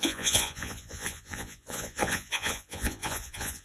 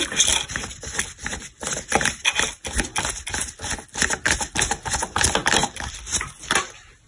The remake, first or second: first